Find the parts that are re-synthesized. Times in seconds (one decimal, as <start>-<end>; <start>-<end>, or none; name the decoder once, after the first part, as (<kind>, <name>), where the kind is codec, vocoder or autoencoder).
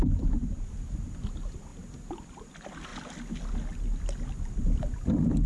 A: 0.0-2.9 (vocoder, BigVGAN v2); 3.5-5.5